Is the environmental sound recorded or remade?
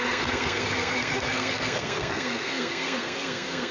remade